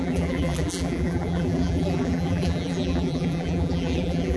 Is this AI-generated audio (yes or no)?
yes